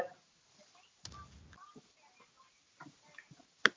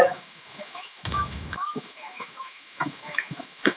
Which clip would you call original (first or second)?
first